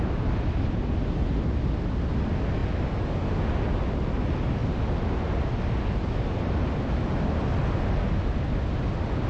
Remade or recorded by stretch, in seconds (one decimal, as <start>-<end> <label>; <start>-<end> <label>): 0.0-9.3 recorded